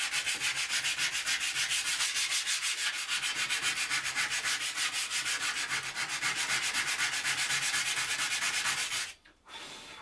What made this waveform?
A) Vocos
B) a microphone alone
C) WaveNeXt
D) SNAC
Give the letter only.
B